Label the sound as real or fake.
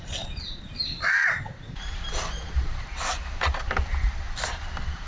fake